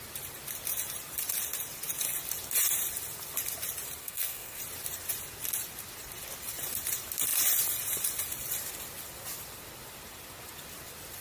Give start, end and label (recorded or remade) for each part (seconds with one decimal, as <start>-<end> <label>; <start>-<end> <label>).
0.0-4.0 recorded; 4.0-4.6 remade; 4.6-11.2 recorded